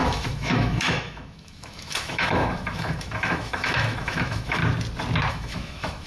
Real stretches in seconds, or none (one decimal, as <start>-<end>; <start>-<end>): 4.6-5.3